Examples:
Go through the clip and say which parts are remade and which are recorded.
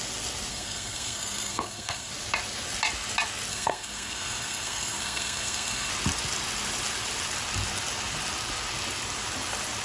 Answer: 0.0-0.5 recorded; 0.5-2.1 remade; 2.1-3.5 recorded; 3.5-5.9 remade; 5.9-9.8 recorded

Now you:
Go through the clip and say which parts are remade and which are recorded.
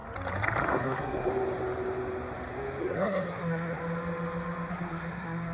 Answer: 0.0-0.7 recorded; 0.7-1.3 remade; 1.3-2.8 recorded; 2.8-3.8 remade; 3.8-4.7 recorded; 4.7-5.5 remade